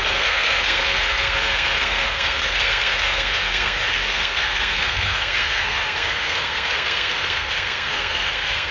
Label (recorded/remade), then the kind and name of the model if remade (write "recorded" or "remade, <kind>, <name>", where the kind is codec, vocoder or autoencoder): remade, codec, SNAC